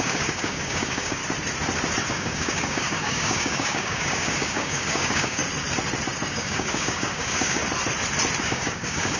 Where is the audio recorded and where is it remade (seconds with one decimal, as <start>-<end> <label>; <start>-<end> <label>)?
0.0-1.2 remade; 1.2-2.1 recorded; 2.1-5.4 remade; 5.4-6.3 recorded; 6.3-7.6 remade; 7.6-8.4 recorded; 8.4-9.2 remade